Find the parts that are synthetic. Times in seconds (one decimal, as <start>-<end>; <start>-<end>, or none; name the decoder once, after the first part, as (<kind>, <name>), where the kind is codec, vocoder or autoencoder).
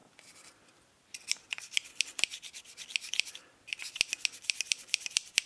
0.0-3.8 (vocoder, BigVGAN v2); 4.4-5.5